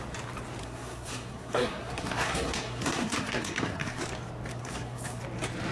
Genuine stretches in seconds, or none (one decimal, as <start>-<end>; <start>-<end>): 0.0-0.6; 4.0-4.5; 5.2-5.7